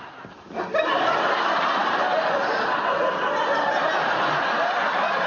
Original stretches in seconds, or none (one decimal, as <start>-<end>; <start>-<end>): 0.0-5.3